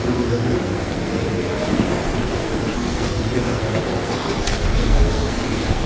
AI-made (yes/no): yes